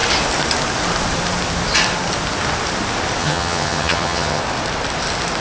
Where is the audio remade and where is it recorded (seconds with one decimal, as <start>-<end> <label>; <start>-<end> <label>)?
0.0-3.2 recorded; 3.2-4.4 remade; 4.4-5.4 recorded

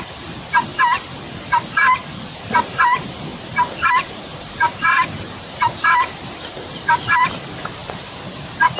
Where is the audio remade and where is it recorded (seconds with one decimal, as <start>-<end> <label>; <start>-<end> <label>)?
0.0-8.8 remade

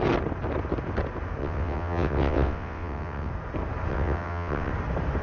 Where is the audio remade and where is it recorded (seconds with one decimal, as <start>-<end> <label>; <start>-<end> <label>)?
0.0-1.4 recorded; 1.4-3.3 remade; 3.3-3.9 recorded; 3.9-4.7 remade; 4.7-5.2 recorded

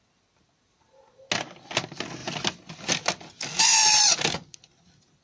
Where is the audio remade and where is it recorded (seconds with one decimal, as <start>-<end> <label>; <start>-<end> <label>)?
0.0-5.2 recorded

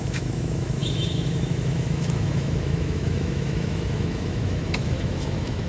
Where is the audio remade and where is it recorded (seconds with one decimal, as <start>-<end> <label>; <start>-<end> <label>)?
0.0-5.7 remade

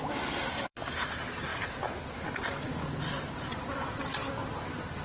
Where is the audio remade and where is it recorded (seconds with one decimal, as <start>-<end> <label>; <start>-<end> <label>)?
0.0-0.5 recorded; 0.5-1.1 remade; 1.1-5.0 recorded

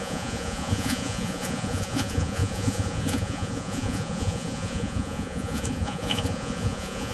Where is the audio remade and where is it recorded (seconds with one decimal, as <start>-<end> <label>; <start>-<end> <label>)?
0.0-7.1 remade

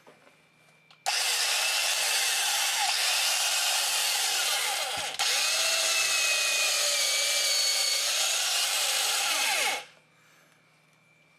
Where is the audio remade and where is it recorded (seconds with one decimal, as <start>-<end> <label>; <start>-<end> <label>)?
0.0-2.7 recorded; 2.7-3.8 remade; 3.8-7.7 recorded; 7.7-10.0 remade; 10.0-11.4 recorded